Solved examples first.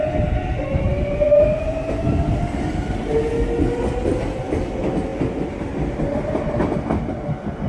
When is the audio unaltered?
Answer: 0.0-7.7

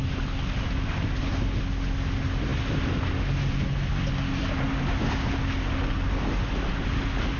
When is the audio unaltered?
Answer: 0.0-7.4

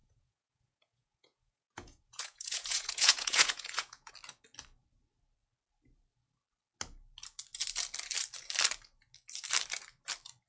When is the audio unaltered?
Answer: 4.1-10.5

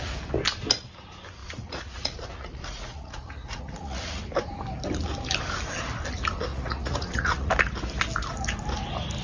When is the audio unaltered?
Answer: 0.0-1.4; 4.2-6.5; 7.5-9.2

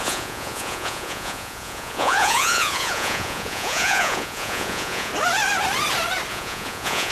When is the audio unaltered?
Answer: 5.1-6.3

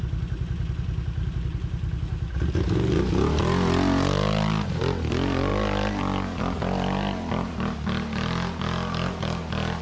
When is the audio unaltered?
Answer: 0.0-9.8

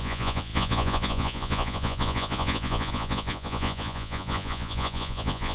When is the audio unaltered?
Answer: none